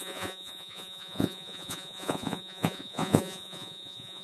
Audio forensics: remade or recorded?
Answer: remade